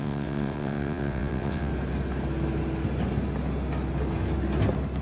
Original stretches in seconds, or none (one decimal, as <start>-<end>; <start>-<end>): 1.7-5.0